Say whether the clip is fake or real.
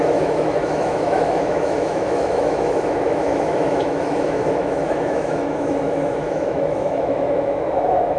fake